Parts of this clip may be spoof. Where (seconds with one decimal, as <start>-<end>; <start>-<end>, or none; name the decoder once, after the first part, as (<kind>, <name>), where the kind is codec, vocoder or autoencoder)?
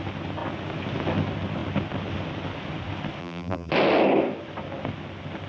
3.2-3.7 (vocoder, BigVGAN v2)